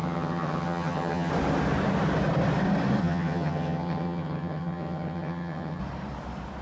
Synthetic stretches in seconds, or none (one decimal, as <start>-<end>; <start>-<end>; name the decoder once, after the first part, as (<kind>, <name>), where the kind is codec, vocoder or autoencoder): 0.0-1.3 (vocoder, HiFi-GAN); 3.0-5.8